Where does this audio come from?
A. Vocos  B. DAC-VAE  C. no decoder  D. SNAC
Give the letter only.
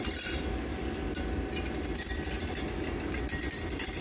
C